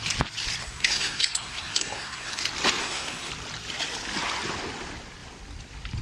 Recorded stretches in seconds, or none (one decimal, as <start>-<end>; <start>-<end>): 0.0-0.6; 2.4-2.8; 3.3-6.0